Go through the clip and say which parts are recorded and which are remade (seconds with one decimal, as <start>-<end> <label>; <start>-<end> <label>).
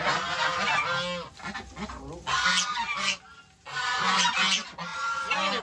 0.0-5.6 recorded